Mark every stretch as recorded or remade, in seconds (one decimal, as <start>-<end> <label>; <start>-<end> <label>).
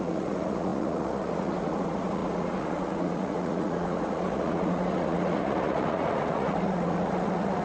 0.0-7.6 remade